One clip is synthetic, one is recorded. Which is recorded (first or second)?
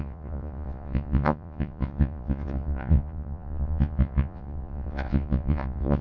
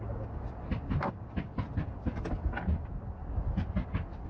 second